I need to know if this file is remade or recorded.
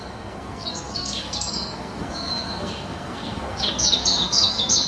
remade